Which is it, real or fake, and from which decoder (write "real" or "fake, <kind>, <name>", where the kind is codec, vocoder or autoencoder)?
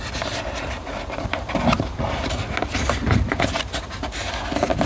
real